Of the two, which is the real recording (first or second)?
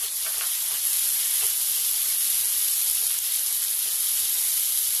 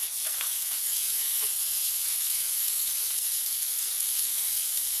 first